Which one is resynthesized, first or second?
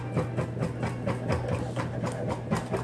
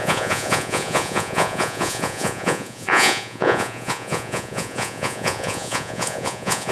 second